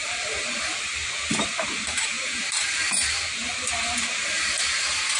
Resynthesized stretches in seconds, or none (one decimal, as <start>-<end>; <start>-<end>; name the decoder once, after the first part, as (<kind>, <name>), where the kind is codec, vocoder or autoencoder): 0.0-0.6 (vocoder, BigVGAN v2); 1.9-3.5